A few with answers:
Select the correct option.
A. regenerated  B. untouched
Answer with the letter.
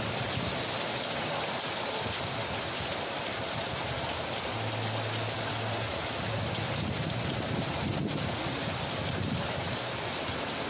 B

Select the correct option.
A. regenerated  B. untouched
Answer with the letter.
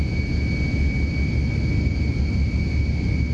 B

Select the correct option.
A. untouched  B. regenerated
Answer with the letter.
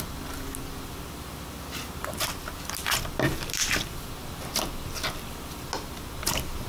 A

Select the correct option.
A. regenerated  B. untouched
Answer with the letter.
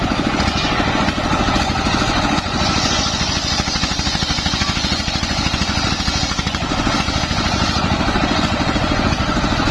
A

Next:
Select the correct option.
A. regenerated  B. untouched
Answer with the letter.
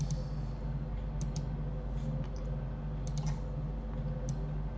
B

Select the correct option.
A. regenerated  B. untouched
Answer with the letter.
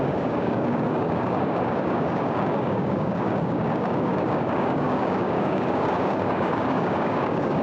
A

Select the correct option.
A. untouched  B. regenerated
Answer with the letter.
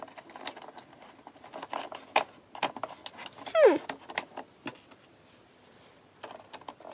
A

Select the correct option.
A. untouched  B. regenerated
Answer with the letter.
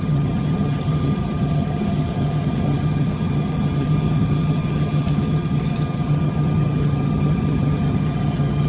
B